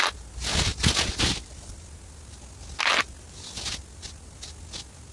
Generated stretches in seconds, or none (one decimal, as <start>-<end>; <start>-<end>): none